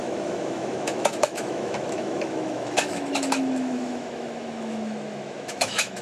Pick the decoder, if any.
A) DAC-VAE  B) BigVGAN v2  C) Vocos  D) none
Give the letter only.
A